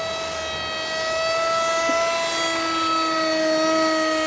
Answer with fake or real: real